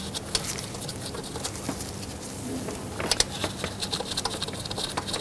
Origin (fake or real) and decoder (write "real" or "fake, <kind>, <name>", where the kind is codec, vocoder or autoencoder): real